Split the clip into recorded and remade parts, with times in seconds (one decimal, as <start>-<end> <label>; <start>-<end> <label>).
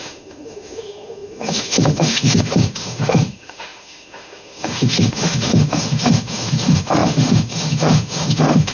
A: 0.0-8.7 remade